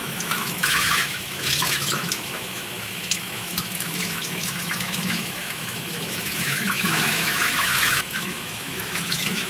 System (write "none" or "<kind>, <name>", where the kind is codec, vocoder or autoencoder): autoencoder, DAC-VAE